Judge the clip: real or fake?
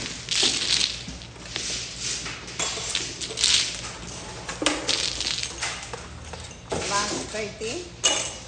real